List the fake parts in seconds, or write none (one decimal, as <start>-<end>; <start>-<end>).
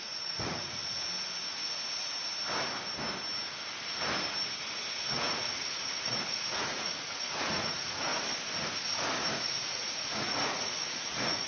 0.0-0.8; 4.9-8.1; 9.4-11.5